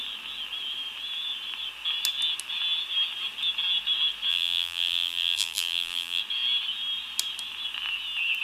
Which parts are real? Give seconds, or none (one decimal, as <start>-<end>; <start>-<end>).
0.0-4.3; 6.2-8.4